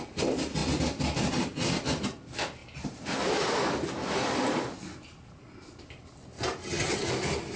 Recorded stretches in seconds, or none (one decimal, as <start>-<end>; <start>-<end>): 0.0-6.6; 7.1-7.6